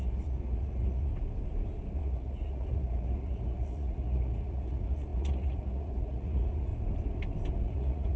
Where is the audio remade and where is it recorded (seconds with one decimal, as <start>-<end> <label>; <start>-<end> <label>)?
0.0-1.1 remade; 1.1-2.0 recorded; 2.0-6.7 remade; 6.7-7.5 recorded; 7.5-8.2 remade